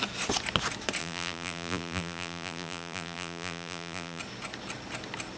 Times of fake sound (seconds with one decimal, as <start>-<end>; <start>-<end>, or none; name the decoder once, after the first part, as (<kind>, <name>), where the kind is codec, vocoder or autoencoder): 1.0-4.2 (vocoder, BigVGAN v2)